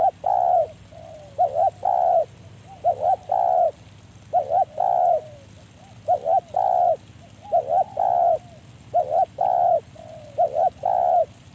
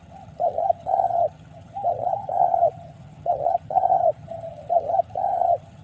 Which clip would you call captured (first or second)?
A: first